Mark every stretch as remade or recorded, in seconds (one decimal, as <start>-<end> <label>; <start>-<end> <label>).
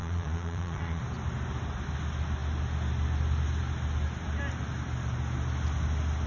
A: 0.0-1.0 remade; 1.0-6.3 recorded